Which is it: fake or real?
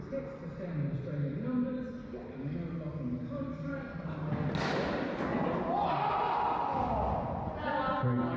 real